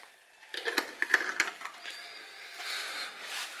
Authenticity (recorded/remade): recorded